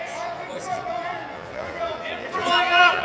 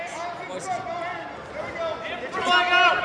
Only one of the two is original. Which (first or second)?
second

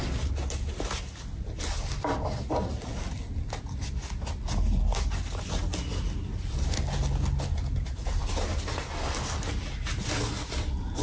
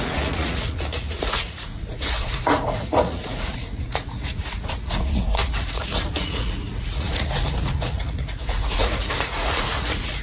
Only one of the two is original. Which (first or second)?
first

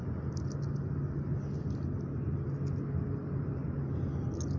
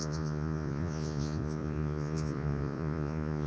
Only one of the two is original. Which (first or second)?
first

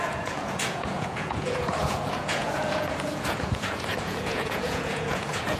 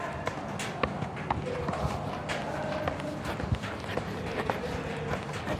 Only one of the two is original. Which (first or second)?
second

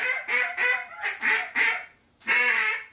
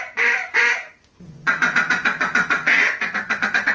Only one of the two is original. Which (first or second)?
first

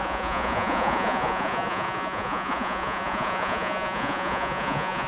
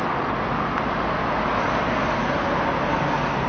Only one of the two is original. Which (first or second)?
second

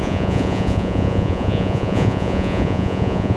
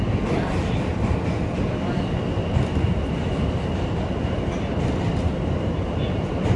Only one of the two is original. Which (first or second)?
second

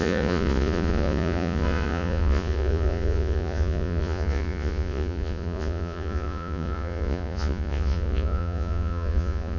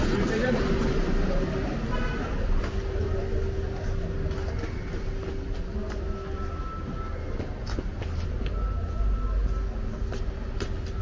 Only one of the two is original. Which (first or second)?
second